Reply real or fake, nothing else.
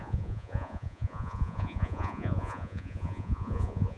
fake